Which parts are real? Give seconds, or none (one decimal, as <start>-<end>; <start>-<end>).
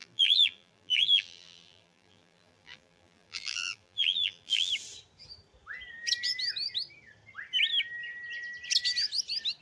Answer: 4.7-9.6